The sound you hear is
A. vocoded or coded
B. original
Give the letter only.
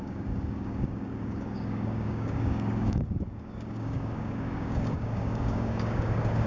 A